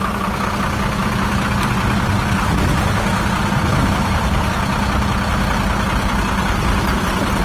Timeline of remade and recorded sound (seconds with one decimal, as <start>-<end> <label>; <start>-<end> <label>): 0.0-3.7 recorded; 3.7-4.5 remade; 4.5-6.4 recorded; 6.4-7.4 remade